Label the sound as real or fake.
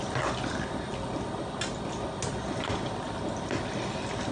real